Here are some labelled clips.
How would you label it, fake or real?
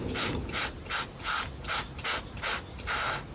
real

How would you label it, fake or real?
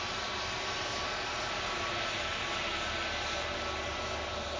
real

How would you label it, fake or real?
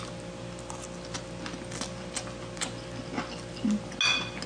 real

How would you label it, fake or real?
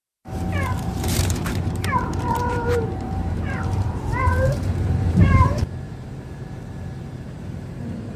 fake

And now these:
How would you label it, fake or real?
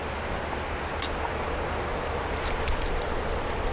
real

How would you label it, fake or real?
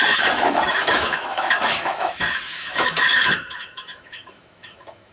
fake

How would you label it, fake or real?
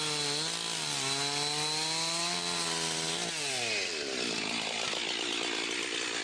real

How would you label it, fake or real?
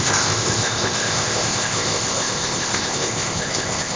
fake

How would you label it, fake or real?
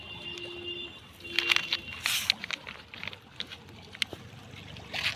real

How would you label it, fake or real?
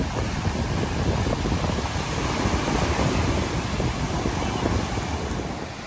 real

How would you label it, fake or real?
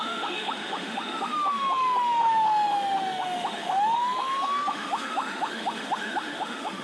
fake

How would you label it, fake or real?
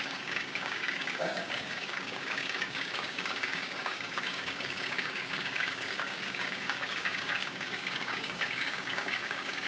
fake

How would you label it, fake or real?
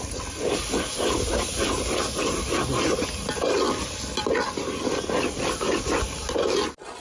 real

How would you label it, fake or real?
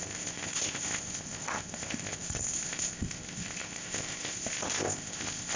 fake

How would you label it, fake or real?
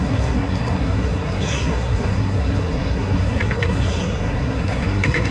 fake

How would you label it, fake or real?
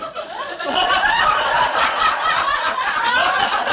fake